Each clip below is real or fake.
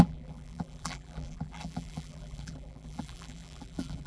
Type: fake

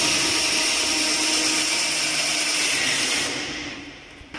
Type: real